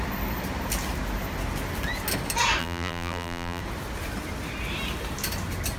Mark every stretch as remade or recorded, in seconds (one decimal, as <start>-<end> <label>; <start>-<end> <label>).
0.0-2.6 recorded; 2.6-3.6 remade; 3.6-5.8 recorded